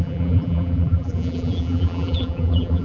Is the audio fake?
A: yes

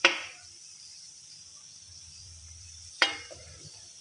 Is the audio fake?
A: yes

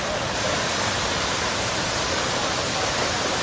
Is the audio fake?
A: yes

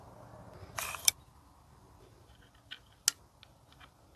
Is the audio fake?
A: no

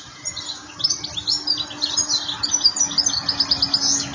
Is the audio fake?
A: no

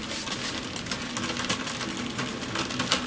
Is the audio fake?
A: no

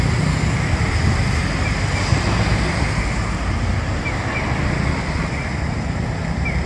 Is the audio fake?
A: no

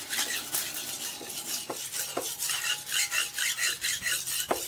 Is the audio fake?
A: no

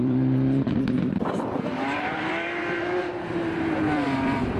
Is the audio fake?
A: yes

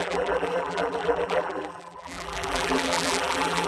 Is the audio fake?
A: yes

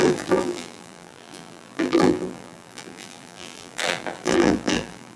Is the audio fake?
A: yes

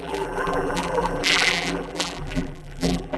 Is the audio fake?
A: yes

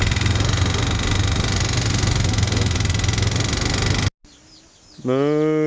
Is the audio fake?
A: no